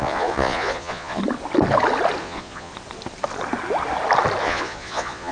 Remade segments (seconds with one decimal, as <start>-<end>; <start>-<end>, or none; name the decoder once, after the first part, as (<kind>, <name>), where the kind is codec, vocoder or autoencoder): 0.0-1.2 (vocoder, Vocos); 2.2-2.7; 4.4-5.3